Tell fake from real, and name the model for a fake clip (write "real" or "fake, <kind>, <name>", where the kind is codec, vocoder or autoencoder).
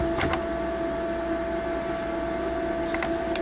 real